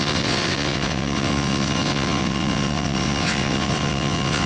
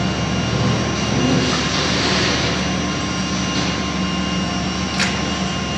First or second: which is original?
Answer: second